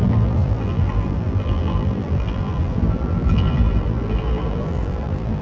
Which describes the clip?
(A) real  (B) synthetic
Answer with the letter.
B